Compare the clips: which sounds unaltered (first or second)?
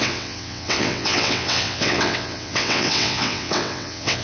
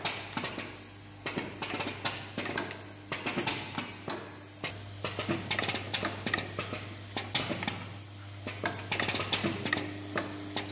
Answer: second